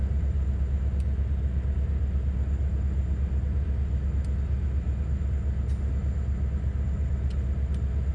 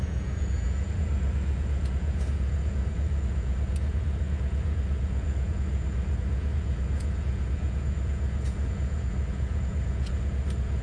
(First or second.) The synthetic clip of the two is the second